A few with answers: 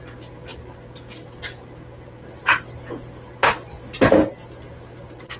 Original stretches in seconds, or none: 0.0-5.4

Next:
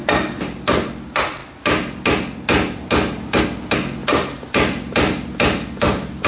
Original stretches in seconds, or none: 0.0-6.3

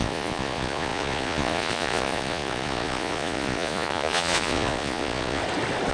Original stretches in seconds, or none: 5.4-5.9

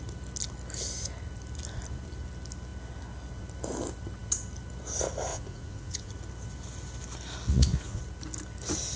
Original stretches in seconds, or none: 0.0-5.3; 6.1-7.5; 8.0-9.0

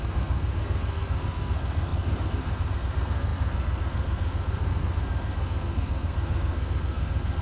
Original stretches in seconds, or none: none

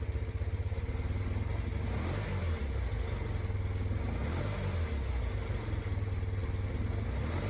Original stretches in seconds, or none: 0.0-7.5

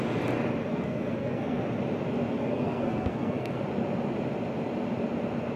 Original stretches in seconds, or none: 0.0-0.7; 1.6-2.4; 3.6-5.6